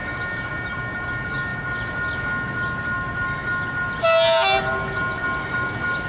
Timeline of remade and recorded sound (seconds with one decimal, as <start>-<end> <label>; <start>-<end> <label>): 0.0-6.1 recorded

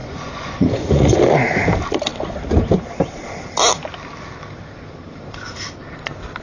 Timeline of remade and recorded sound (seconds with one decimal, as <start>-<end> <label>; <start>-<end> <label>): 0.0-1.2 remade; 1.2-6.4 recorded

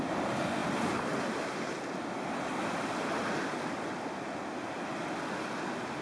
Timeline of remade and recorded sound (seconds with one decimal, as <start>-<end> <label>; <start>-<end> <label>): 0.0-6.0 recorded

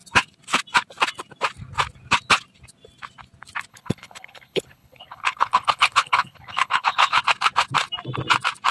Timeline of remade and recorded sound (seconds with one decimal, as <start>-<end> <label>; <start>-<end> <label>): 0.0-3.7 recorded; 3.7-7.2 remade; 7.2-8.7 recorded

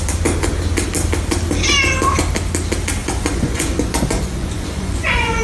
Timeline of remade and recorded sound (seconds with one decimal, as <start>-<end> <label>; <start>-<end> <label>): 0.0-3.0 recorded; 3.0-5.4 remade

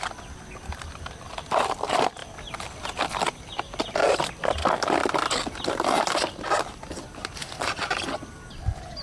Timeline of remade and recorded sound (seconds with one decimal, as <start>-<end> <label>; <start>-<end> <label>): 0.0-9.0 recorded

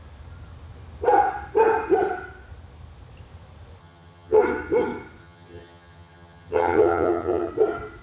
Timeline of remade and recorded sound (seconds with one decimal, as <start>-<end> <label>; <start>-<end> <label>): 0.0-3.8 recorded; 3.8-4.4 remade; 4.4-5.2 recorded; 5.2-7.5 remade; 7.5-8.0 recorded

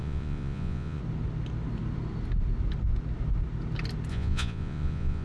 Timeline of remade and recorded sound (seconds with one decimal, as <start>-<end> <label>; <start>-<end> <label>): 0.0-1.0 remade; 1.0-4.1 recorded; 4.1-5.2 remade